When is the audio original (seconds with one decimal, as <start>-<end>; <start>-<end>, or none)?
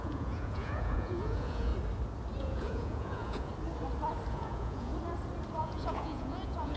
1.7-2.4; 3.5-4.3; 4.9-5.6